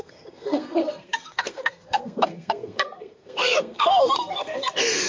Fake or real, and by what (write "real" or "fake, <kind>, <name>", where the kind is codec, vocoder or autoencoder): fake, codec, SNAC